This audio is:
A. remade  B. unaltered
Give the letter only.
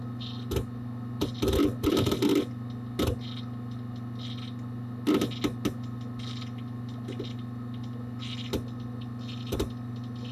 B